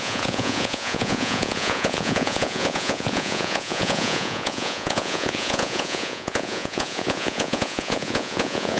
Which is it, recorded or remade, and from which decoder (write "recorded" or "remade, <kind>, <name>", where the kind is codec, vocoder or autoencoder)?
remade, vocoder, Vocos